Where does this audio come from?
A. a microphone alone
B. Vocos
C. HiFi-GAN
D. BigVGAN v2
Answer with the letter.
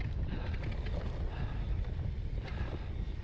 A